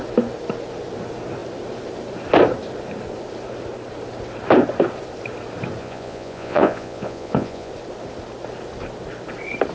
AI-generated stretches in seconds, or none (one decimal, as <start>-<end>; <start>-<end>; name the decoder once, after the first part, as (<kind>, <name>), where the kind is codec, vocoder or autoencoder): 5.8-7.7 (vocoder, Vocos)